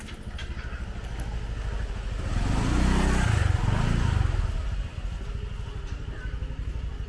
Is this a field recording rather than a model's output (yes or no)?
yes